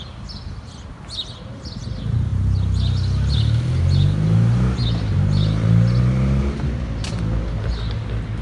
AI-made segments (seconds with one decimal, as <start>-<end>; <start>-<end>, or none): none